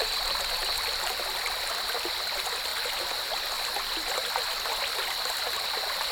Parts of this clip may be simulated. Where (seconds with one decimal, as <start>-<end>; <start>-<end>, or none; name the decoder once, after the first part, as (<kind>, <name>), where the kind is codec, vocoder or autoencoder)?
none